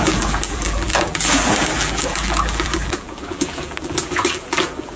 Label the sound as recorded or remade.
remade